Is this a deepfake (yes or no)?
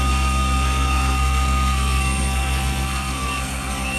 yes